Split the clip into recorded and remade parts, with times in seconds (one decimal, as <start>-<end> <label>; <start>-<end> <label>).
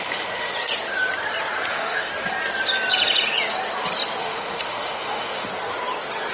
0.0-0.5 remade; 0.5-1.7 recorded; 1.7-2.1 remade; 2.1-4.2 recorded; 4.2-5.5 remade; 5.5-6.3 recorded